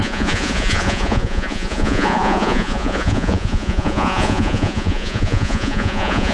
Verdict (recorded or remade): remade